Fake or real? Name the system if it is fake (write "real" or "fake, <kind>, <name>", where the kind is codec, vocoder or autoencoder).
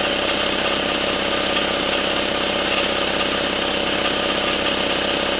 real